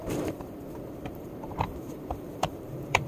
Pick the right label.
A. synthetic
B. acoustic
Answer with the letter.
A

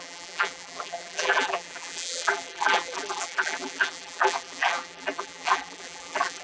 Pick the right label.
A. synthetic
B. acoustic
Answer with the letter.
A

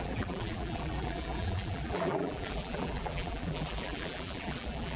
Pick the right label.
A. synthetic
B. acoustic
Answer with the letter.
A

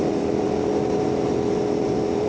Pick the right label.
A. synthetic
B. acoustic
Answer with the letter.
A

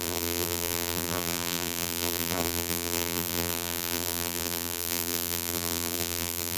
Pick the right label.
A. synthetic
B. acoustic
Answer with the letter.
A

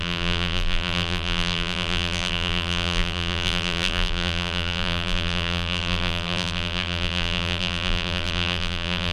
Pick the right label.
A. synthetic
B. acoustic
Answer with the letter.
A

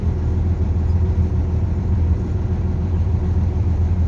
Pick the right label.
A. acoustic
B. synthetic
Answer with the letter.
B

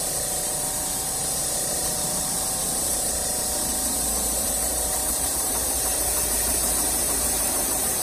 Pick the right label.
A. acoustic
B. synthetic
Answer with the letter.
B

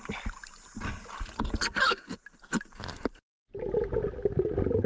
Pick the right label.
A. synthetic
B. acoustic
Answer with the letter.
B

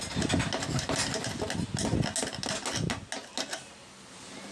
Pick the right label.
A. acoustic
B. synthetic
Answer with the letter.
A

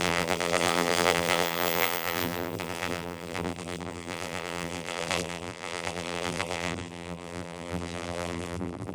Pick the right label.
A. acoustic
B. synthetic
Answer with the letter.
B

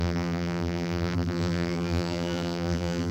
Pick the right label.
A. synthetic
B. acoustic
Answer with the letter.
A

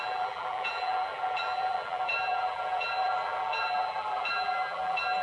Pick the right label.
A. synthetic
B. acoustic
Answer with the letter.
A